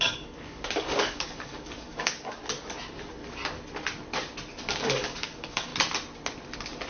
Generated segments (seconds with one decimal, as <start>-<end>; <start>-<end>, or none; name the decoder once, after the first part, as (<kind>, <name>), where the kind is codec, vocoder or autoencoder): 0.0-2.4 (codec, DAC); 4.7-5.7